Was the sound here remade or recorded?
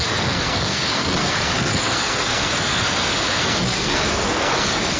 remade